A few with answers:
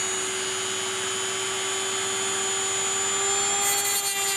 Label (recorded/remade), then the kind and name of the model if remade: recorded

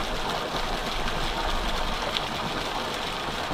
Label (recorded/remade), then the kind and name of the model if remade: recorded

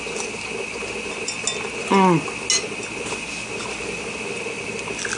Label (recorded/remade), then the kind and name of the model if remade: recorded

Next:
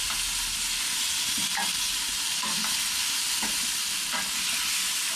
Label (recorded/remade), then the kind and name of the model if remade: recorded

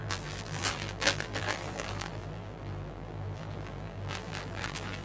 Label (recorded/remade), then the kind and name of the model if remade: remade, vocoder, BigVGAN v2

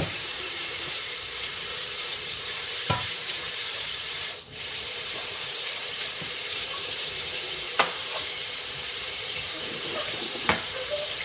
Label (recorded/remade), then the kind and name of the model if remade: remade, vocoder, BigVGAN v2